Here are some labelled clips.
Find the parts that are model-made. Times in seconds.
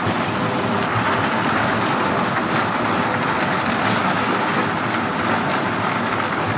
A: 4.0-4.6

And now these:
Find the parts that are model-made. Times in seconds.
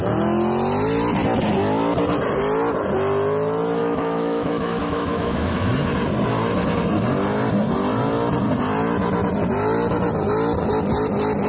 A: 3.8-5.7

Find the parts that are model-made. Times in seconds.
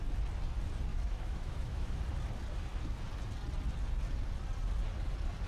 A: 0.9-2.0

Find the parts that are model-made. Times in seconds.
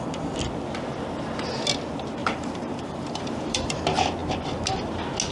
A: 2.2-3.8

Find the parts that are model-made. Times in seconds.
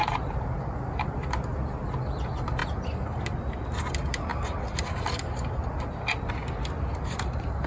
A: none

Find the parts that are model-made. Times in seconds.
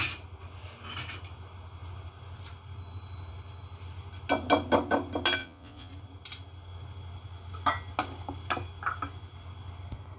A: 5.4-5.9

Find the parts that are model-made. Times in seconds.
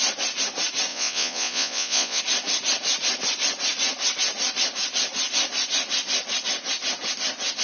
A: 0.9-2.2